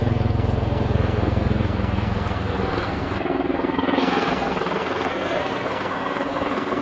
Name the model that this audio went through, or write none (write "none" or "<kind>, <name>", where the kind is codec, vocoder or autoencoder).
codec, SNAC